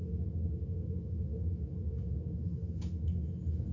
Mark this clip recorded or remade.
remade